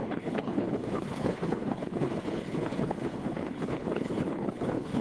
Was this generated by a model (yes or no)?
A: yes